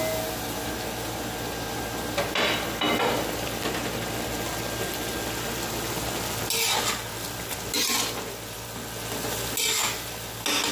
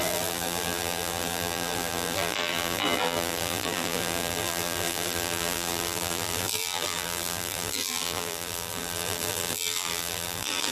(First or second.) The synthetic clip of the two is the second